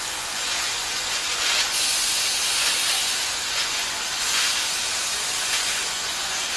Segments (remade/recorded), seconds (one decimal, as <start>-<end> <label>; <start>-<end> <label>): 0.0-6.6 remade